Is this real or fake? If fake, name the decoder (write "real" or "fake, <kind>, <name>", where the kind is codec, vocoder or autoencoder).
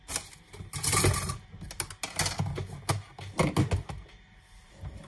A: real